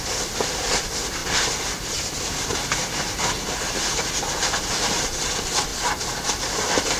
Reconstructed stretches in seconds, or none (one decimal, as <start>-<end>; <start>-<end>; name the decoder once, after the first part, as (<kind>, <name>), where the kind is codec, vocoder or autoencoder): 0.0-1.2 (vocoder, BigVGAN v2); 1.9-2.5; 4.5-5.7; 6.4-7.0